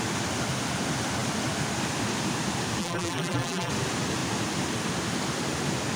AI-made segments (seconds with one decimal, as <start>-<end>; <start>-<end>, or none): 2.8-3.7